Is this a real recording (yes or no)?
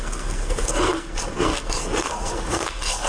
no